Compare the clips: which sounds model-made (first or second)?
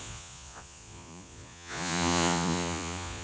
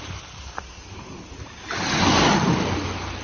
first